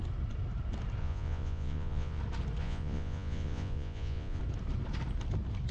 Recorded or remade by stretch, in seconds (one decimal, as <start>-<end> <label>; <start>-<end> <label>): 0.0-1.0 recorded; 1.0-2.2 remade; 2.2-2.6 recorded; 2.6-4.4 remade; 4.4-5.7 recorded